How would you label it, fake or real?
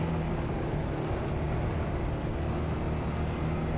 real